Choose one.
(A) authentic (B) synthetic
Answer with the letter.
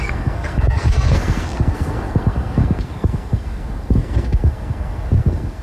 B